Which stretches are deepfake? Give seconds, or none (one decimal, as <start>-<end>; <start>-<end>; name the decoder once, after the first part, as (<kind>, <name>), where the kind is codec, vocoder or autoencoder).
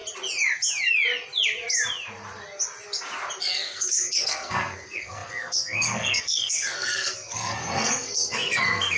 3.4-9.0 (codec, SNAC)